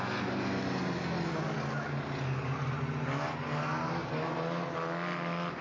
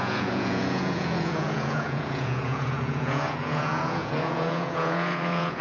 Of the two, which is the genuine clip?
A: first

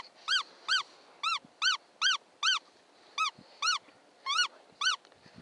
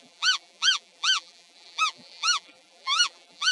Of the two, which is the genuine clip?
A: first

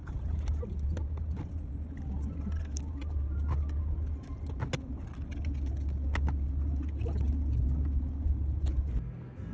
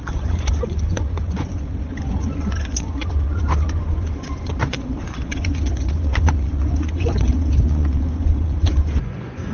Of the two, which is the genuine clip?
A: first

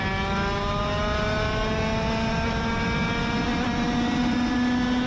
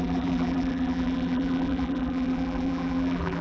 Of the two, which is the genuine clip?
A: first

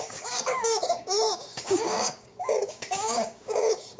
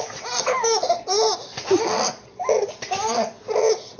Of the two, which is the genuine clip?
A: second